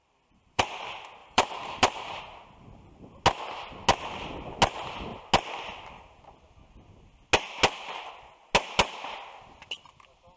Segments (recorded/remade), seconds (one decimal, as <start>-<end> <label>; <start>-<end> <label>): 0.0-0.6 remade; 0.6-1.2 recorded; 1.2-2.2 remade; 2.2-10.4 recorded

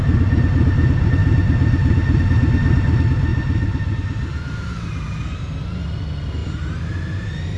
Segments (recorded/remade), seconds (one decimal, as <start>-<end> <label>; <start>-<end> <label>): 0.0-1.2 recorded; 1.2-2.2 remade; 2.2-3.3 recorded; 3.3-5.6 remade; 5.6-6.4 recorded; 6.4-7.6 remade

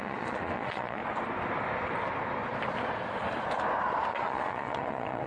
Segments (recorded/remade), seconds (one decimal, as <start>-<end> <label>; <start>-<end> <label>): 0.0-1.0 remade; 1.0-4.1 recorded; 4.1-5.3 remade

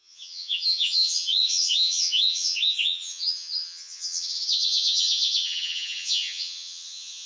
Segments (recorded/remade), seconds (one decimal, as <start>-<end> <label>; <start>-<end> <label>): 0.0-7.3 remade

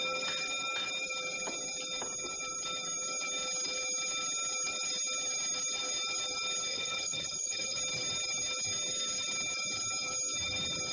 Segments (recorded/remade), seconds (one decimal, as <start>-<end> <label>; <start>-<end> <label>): 0.0-6.7 recorded; 6.7-7.8 remade; 7.8-10.9 recorded

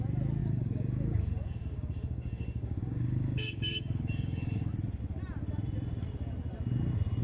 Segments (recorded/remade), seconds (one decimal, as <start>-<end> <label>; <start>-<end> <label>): 0.0-0.4 recorded; 0.4-4.7 remade; 4.7-7.2 recorded

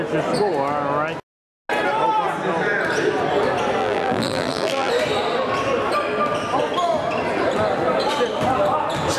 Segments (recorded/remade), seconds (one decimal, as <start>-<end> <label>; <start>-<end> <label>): 0.0-3.8 recorded; 3.8-4.9 remade; 4.9-9.2 recorded

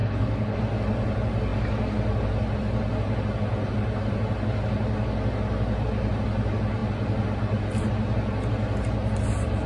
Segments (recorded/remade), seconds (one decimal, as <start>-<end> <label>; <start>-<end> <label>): 0.0-0.6 remade; 0.6-9.7 recorded